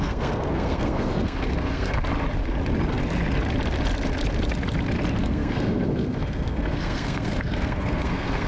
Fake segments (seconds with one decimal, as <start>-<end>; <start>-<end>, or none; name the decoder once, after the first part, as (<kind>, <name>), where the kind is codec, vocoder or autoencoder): 0.0-2.0 (codec, SNAC); 5.2-8.5